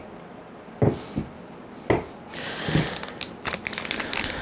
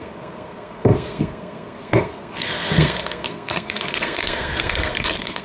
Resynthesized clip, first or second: second